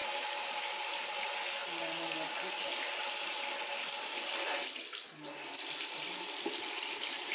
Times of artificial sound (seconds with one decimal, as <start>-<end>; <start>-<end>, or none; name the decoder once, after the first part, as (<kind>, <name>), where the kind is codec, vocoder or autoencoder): none